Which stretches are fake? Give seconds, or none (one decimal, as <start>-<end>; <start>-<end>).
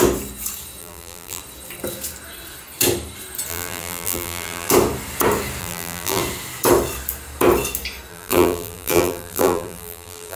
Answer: 0.8-1.4; 3.5-4.7; 5.6-6.2; 8.1-10.4